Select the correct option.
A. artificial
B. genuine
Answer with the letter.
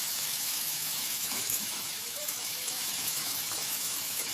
A